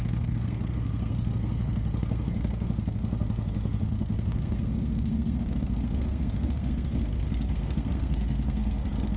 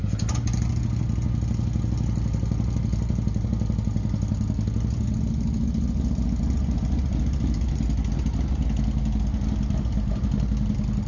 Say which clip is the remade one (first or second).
first